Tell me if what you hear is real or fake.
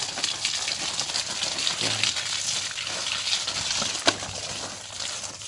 real